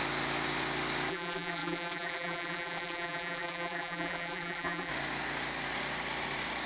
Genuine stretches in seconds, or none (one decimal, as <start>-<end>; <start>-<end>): 0.0-1.1; 4.9-6.7